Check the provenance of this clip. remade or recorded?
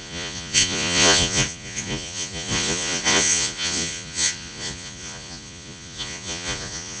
remade